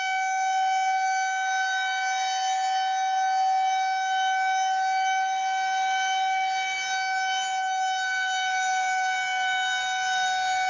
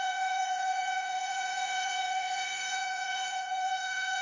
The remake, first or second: second